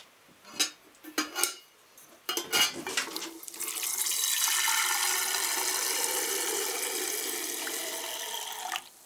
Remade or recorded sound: recorded